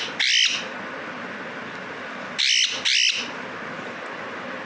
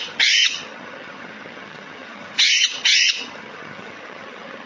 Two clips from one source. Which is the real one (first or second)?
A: first